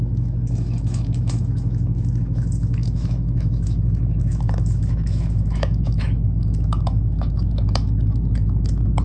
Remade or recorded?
remade